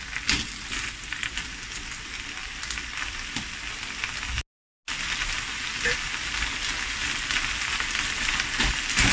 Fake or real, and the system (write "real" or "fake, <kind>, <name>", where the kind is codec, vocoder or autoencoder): real